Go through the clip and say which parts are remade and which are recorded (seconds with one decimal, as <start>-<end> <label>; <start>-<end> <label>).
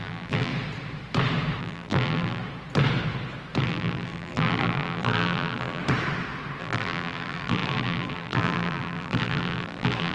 0.0-0.5 remade; 0.5-1.6 recorded; 1.6-2.4 remade; 2.4-3.6 recorded; 3.6-5.8 remade; 5.8-6.6 recorded; 6.6-10.1 remade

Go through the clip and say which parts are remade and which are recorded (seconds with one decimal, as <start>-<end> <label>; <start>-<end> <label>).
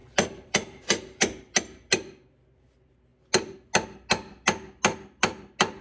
0.0-1.2 remade; 1.2-5.8 recorded